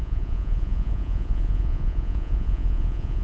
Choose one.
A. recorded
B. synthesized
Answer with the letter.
B